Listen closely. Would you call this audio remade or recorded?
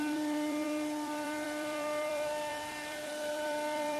remade